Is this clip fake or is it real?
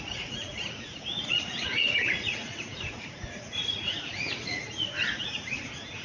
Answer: fake